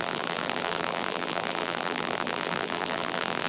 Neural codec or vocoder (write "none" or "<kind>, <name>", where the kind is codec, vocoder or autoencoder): vocoder, BigVGAN v2